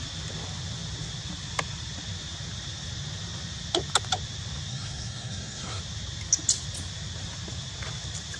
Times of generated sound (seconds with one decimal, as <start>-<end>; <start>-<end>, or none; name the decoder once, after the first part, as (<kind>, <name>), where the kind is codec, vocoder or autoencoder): 4.7-5.8 (codec, SNAC)